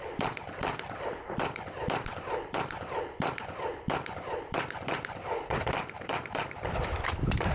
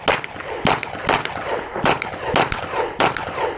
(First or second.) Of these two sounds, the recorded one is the second